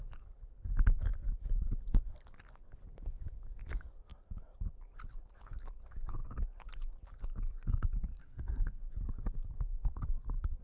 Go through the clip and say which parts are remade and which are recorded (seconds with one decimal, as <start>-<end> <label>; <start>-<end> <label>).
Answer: 0.0-8.2 recorded; 8.2-8.8 remade; 8.8-10.6 recorded